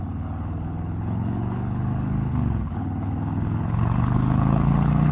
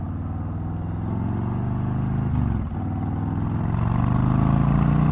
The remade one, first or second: first